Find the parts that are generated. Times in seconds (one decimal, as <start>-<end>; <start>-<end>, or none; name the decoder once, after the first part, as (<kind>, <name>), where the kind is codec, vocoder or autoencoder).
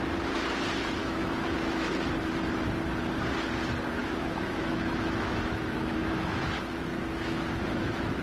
1.0-1.9 (autoencoder, DAC-VAE); 4.0-8.2